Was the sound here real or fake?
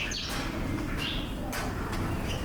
real